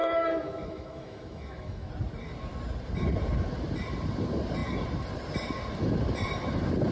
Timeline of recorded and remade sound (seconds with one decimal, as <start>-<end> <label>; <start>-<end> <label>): 0.0-1.9 remade; 1.9-6.9 recorded